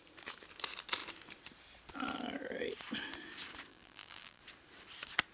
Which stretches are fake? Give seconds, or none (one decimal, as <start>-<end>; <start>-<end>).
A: 3.7-4.4